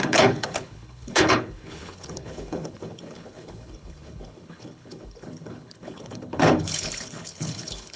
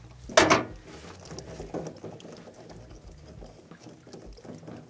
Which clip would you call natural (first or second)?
second